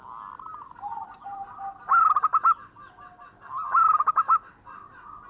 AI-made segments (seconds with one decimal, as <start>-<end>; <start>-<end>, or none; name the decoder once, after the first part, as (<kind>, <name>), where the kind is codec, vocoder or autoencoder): none

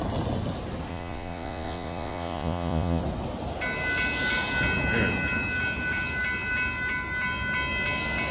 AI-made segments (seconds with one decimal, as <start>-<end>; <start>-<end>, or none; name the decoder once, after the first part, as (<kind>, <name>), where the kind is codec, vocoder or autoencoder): 0.9-3.0 (vocoder, Vocos)

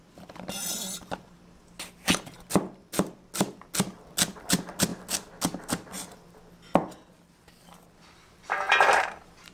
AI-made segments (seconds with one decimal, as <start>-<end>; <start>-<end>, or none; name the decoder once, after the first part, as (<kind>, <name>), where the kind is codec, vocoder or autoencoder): none

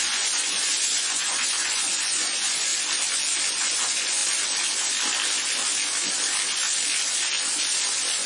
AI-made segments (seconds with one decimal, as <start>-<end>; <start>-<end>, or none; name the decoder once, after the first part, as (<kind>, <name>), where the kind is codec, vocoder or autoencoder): 0.0-2.7 (vocoder, Vocos); 3.5-4.2

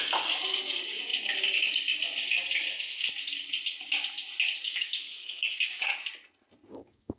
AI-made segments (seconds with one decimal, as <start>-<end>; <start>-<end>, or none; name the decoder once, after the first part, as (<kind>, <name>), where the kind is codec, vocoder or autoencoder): 0.0-1.1 (codec, DAC); 4.6-5.9; 6.7-7.2